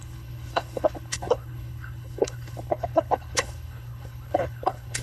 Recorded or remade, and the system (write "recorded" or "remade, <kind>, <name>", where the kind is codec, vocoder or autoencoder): remade, codec, HILCodec